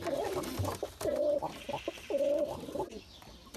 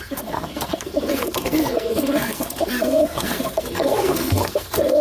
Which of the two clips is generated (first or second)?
second